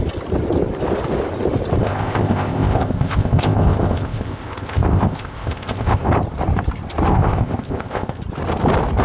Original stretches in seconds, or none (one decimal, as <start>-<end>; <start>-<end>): 0.0-1.8; 6.1-7.1; 8.2-9.0